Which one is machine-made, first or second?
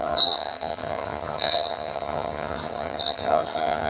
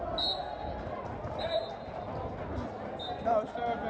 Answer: first